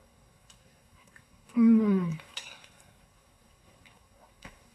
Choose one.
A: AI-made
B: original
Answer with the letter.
A